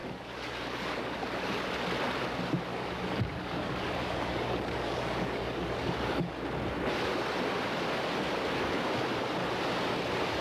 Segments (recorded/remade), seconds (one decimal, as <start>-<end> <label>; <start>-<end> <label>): 0.0-1.6 remade; 1.6-2.7 recorded; 2.7-6.3 remade; 6.3-10.4 recorded